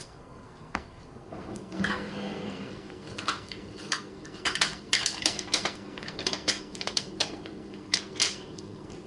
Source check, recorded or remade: remade